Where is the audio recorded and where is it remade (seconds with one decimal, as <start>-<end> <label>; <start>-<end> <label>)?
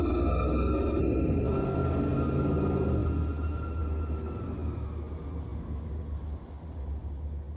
0.0-7.6 recorded